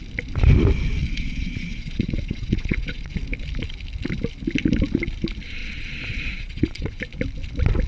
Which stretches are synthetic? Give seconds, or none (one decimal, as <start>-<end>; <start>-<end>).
1.0-3.2; 5.6-7.0